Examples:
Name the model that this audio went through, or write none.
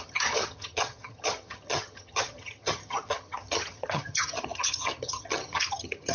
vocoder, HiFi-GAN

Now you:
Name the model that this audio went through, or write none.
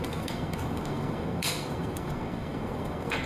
codec, SNAC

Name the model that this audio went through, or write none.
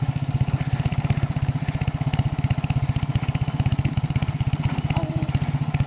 none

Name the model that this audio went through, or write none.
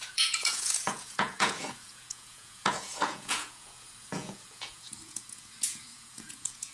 vocoder, Vocos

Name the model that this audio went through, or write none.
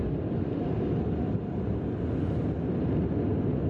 none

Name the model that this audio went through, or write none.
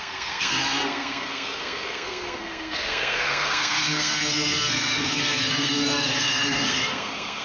codec, SNAC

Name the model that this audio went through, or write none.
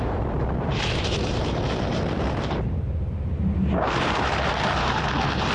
vocoder, BigVGAN v2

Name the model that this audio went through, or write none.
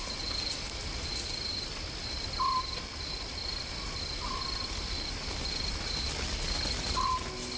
none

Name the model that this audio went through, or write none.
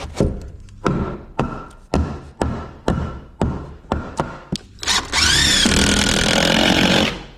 none